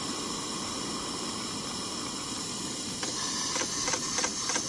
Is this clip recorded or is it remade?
recorded